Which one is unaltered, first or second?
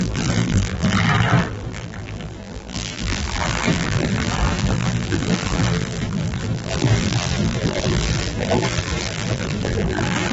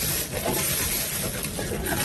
second